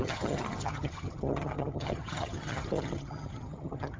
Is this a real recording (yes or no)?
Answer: no